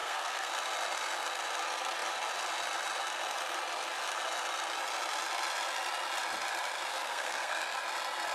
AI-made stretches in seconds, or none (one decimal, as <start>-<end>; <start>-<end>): 0.0-0.5; 6.9-7.6